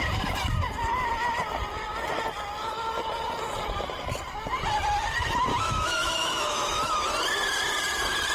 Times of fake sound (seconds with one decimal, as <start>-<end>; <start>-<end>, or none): 5.5-7.1